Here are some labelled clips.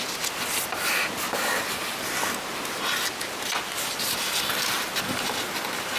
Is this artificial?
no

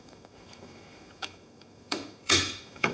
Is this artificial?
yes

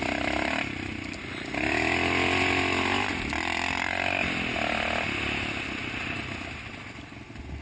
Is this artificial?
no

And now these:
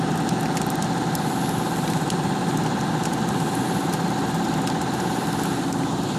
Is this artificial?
no